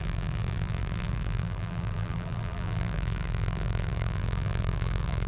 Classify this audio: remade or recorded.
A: remade